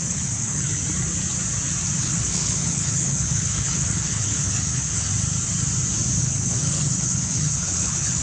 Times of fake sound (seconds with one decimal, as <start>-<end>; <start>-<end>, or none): 0.0-0.8; 2.0-5.1; 6.2-8.2